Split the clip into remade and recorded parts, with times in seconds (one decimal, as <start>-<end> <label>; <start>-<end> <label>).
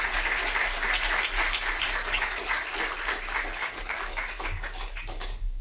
0.0-0.4 remade; 0.4-1.8 recorded; 1.8-2.6 remade; 2.6-3.6 recorded; 3.6-5.6 remade